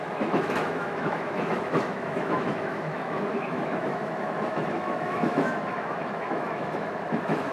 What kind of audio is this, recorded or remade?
remade